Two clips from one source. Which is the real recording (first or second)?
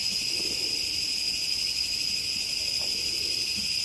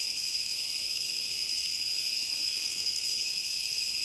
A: first